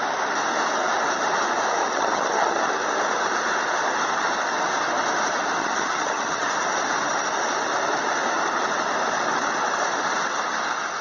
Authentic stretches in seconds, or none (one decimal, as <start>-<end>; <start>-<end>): 0.0-1.8; 2.7-5.6; 6.5-11.0